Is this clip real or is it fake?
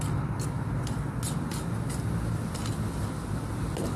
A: real